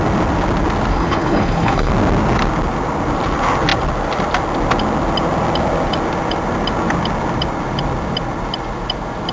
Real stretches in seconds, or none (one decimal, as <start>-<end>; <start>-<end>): 0.0-0.9; 1.9-9.3